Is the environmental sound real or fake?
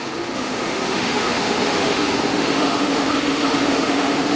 fake